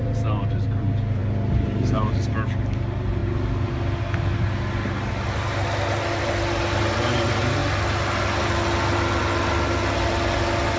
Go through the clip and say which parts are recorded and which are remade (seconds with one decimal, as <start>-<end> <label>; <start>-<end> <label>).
0.0-10.8 recorded